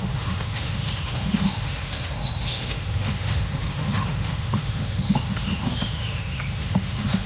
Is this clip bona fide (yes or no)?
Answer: no